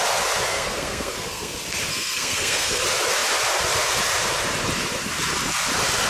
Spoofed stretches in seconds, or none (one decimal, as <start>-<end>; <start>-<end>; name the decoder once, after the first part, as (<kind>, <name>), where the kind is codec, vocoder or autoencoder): 0.5-1.5 (codec, SNAC); 1.9-2.8